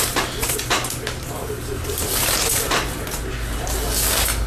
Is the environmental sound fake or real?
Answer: real